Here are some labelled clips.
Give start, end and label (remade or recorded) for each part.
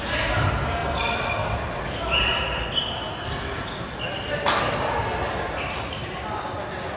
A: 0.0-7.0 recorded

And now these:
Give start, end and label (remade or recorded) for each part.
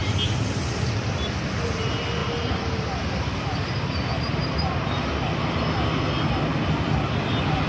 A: 0.0-7.7 recorded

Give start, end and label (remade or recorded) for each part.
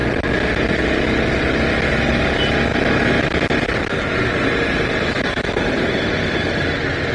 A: 0.0-7.1 recorded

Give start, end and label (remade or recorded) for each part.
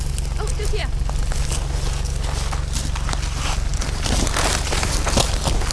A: 0.0-5.7 recorded